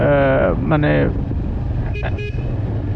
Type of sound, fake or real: real